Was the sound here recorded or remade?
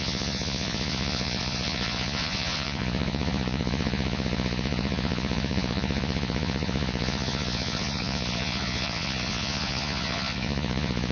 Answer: remade